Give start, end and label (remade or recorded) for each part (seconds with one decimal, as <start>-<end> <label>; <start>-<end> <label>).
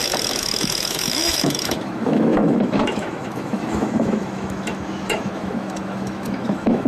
0.0-6.9 remade